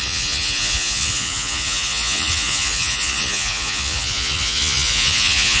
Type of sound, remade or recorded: remade